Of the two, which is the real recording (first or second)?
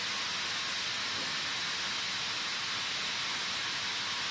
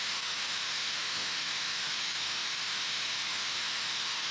first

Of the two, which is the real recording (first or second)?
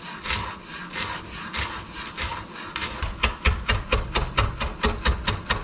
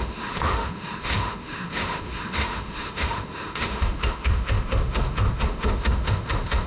first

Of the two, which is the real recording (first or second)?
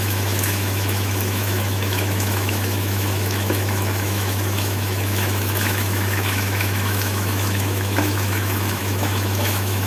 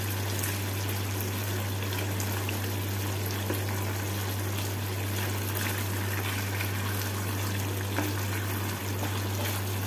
second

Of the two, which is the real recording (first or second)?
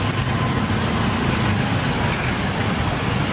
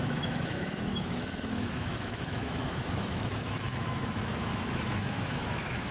first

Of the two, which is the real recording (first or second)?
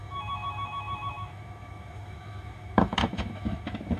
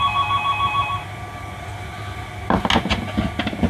second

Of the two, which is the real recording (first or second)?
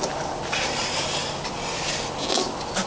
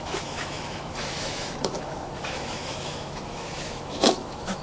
first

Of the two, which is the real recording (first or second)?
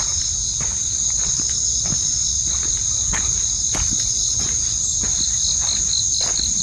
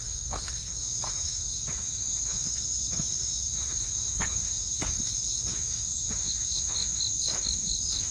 first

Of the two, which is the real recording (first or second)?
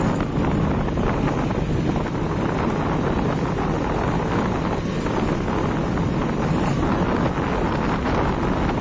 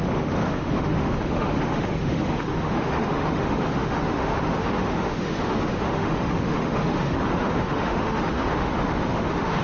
first